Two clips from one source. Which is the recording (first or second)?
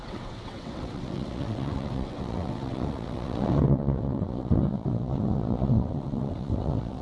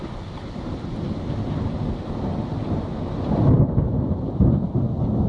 second